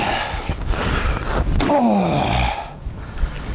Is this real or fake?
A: real